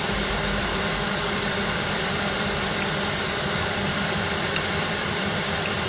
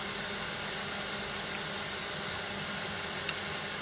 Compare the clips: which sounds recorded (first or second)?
second